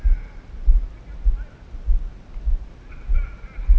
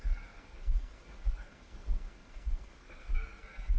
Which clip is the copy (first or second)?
second